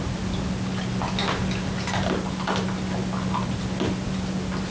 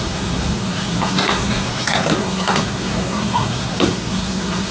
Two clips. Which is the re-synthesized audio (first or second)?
second